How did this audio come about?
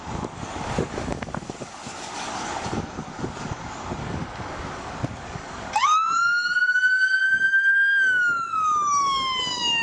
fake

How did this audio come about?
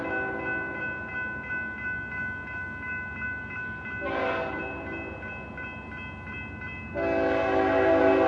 real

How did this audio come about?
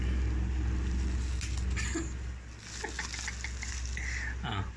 real